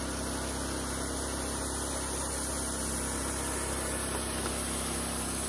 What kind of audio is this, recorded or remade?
recorded